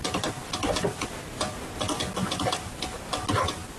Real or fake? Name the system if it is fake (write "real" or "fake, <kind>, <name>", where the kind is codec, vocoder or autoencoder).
real